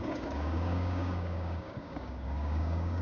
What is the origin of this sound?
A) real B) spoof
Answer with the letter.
B